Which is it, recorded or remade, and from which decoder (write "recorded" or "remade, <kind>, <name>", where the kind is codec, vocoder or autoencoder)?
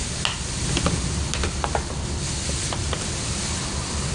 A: recorded